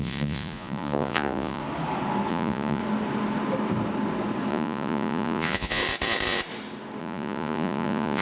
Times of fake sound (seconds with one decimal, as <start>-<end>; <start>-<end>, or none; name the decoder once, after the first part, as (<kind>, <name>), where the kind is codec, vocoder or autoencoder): 0.0-1.6 (vocoder, Vocos); 2.3-2.8; 4.5-5.8; 7.0-8.2